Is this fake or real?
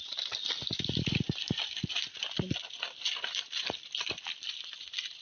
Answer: real